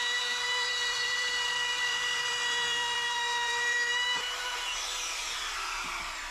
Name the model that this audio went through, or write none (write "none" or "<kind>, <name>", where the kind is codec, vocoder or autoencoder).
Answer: vocoder, BigVGAN v2